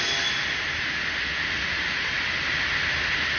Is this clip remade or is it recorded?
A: recorded